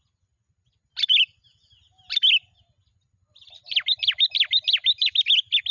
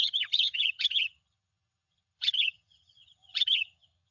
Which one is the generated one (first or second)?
second